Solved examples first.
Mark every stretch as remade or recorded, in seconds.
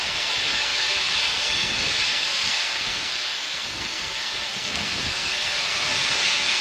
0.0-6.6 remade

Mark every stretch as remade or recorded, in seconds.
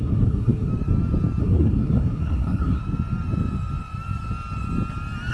0.0-0.7 remade; 0.7-1.4 recorded; 1.4-2.8 remade; 2.8-5.3 recorded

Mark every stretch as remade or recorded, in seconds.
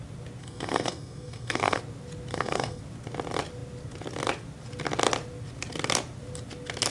0.0-0.4 recorded; 0.4-1.8 remade; 1.8-2.3 recorded; 2.3-2.8 remade; 2.8-6.9 recorded